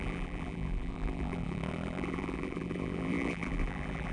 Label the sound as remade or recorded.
remade